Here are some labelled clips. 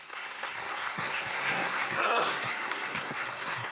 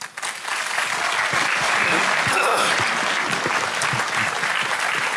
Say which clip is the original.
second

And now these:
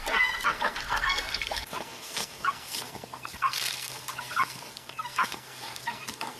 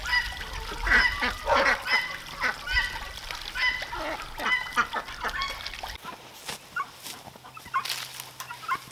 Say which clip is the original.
second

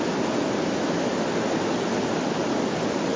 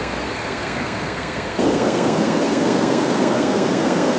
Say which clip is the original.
first